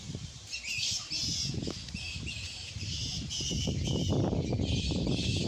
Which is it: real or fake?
real